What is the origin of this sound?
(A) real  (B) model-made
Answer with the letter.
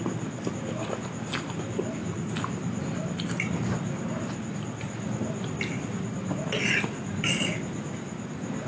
A